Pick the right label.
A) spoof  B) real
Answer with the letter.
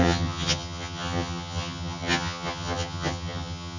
A